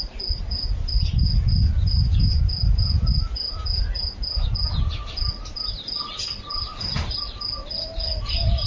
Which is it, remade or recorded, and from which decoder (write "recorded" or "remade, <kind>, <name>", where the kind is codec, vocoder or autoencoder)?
recorded